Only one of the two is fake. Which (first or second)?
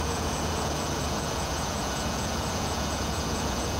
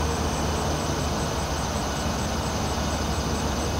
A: first